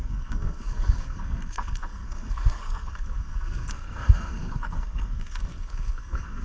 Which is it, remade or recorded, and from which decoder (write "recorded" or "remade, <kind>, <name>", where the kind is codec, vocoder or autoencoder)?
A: remade, codec, SNAC